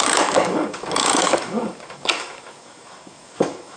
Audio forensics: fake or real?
fake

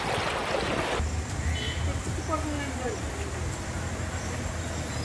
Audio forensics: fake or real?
real